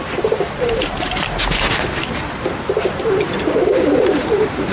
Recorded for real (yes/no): no